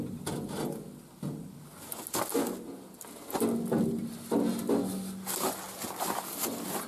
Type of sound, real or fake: real